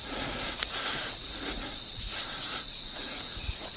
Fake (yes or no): yes